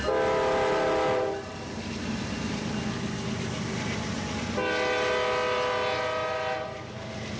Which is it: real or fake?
real